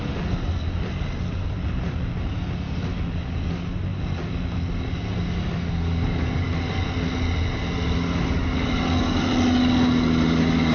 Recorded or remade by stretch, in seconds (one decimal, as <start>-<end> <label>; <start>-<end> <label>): 0.0-10.7 recorded